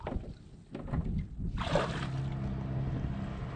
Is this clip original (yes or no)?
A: yes